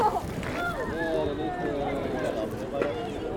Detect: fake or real real